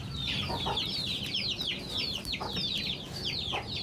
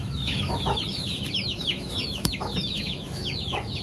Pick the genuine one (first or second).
first